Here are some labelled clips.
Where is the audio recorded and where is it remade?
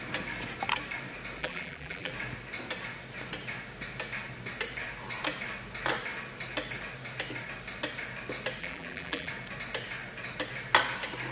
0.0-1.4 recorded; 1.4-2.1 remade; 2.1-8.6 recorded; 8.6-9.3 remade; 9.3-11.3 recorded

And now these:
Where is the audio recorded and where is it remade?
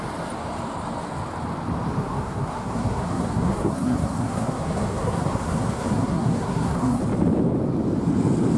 0.0-2.0 recorded; 2.0-7.0 remade; 7.0-8.6 recorded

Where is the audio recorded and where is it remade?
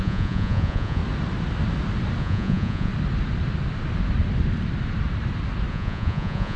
0.0-1.0 remade; 1.0-2.2 recorded; 2.2-2.9 remade; 2.9-5.7 recorded; 5.7-6.6 remade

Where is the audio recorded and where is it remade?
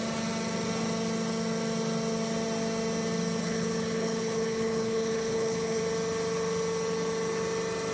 0.0-3.4 recorded; 3.4-5.8 remade; 5.8-7.9 recorded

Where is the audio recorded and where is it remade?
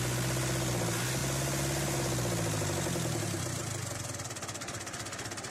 0.0-5.5 recorded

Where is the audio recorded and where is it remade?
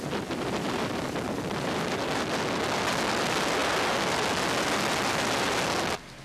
0.0-6.2 recorded